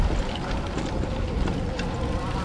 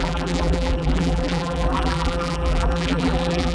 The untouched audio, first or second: first